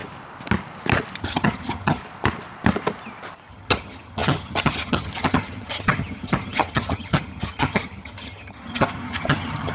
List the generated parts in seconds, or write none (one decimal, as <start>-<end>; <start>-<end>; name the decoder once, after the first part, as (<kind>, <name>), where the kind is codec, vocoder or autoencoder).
1.2-2.0 (vocoder, HiFi-GAN); 3.5-9.7